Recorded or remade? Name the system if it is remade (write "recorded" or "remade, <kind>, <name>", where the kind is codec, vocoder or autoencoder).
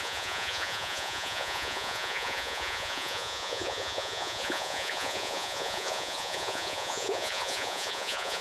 remade, vocoder, Vocos